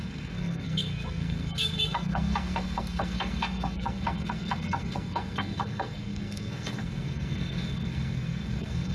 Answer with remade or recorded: remade